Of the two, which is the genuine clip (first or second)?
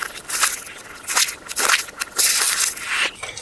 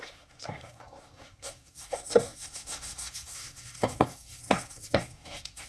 first